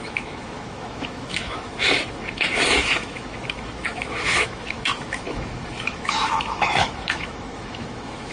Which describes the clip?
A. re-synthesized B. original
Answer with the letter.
A